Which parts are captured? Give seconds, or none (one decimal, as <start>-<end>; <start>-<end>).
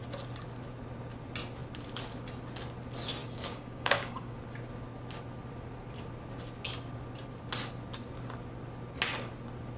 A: 0.0-3.2; 4.4-9.8